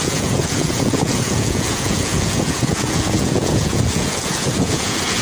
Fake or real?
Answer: fake